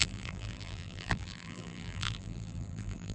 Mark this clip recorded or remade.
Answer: remade